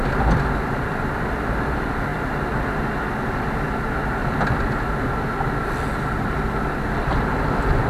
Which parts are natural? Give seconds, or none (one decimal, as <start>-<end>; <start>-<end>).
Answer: 2.1-6.2